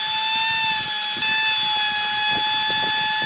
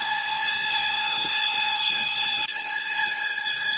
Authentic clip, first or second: first